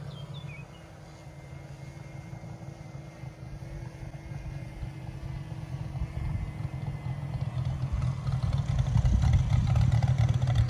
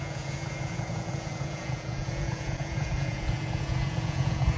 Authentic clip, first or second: first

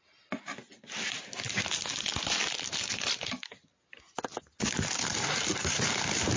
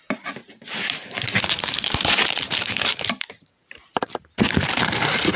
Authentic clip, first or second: first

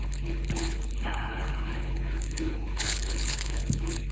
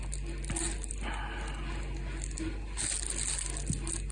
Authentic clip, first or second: second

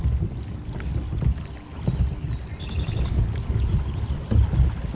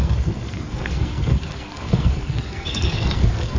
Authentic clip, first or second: first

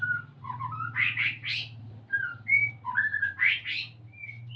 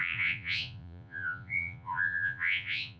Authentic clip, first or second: first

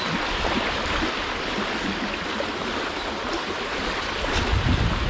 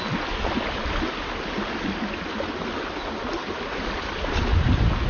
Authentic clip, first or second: second